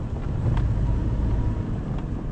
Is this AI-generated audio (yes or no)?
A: no